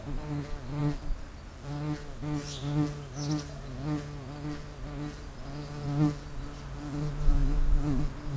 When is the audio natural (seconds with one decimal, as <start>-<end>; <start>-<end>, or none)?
0.0-8.4